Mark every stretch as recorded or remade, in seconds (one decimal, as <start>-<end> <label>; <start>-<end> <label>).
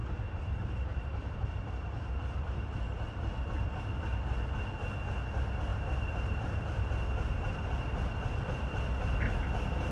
0.0-3.2 remade; 3.2-5.7 recorded; 5.7-6.8 remade; 6.8-9.9 recorded